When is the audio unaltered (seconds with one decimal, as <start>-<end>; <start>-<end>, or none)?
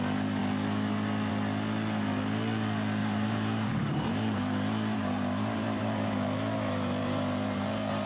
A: 0.0-3.0